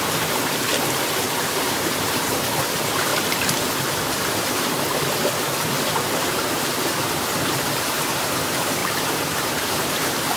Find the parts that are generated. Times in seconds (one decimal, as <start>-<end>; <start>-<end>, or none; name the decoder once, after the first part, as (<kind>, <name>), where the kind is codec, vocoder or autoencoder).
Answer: 0.0-0.7 (vocoder, BigVGAN v2); 1.4-3.1; 7.8-10.4